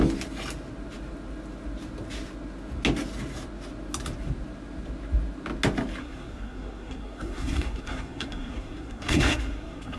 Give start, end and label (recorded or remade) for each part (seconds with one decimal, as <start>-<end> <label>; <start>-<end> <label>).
0.0-6.0 recorded; 6.0-10.0 remade